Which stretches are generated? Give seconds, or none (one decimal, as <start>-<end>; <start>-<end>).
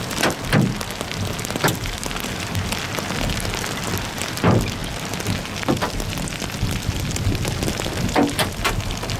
4.8-5.3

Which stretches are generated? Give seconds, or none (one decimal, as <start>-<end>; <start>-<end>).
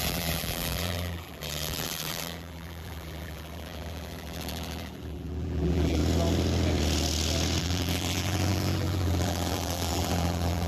0.0-6.0; 7.6-10.7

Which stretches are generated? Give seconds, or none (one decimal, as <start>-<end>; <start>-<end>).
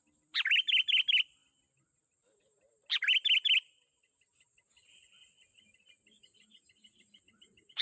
none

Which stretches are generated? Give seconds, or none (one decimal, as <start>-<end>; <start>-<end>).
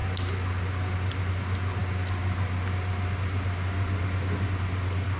none